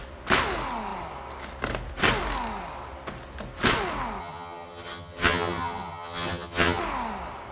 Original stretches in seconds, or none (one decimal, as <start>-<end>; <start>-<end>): 0.0-4.2; 6.8-7.5